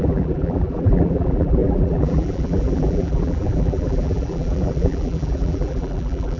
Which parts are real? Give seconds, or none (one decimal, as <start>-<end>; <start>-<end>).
none